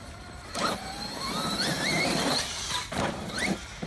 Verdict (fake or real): fake